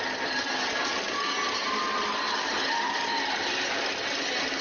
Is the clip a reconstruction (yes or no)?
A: no